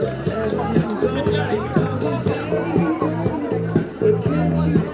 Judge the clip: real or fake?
real